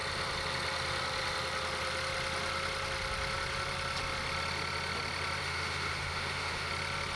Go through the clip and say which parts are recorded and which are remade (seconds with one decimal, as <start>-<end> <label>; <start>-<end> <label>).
0.0-5.4 recorded; 5.4-6.7 remade; 6.7-7.2 recorded